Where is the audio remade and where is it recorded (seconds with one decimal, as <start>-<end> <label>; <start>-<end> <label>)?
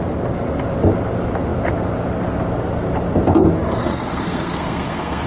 0.0-3.8 recorded; 3.8-5.3 remade